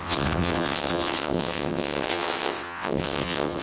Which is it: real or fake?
fake